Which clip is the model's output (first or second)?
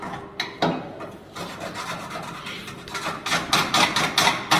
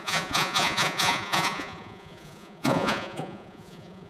second